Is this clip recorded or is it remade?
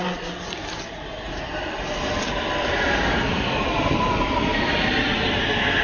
recorded